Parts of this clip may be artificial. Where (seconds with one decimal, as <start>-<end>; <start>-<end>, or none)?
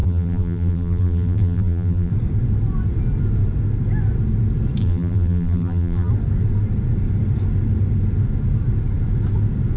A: 0.0-2.1; 4.8-6.1